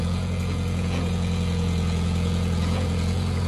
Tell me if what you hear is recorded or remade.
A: remade